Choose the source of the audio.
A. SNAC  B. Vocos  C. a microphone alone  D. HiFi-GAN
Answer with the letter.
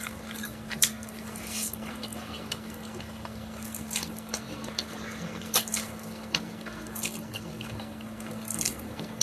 A